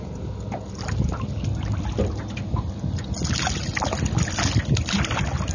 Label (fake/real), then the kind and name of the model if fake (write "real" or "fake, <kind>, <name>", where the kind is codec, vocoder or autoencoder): real